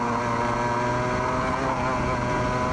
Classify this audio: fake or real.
real